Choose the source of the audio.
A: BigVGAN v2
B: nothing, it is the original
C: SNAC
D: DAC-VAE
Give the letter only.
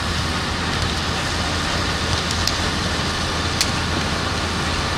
B